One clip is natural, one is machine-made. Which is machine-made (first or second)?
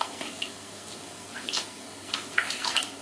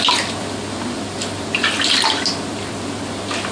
first